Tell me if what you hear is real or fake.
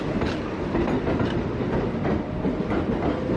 real